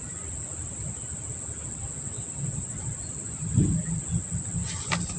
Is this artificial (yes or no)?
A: no